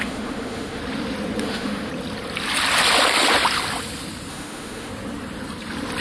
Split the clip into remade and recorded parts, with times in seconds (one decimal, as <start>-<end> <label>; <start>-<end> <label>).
0.0-0.8 remade; 0.8-1.4 recorded; 1.4-1.9 remade; 1.9-4.3 recorded; 4.3-4.9 remade; 4.9-6.0 recorded